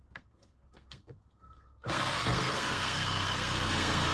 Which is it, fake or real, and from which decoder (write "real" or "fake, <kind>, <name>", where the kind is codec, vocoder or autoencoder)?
fake, codec, SNAC